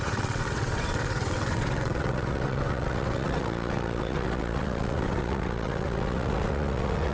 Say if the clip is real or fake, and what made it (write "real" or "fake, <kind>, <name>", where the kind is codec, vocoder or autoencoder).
fake, vocoder, WaveNeXt